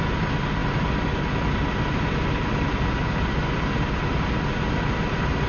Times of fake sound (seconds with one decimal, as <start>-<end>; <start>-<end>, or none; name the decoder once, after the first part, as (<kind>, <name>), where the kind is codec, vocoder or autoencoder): none